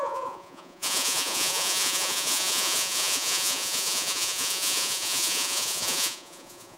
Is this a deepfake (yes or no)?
yes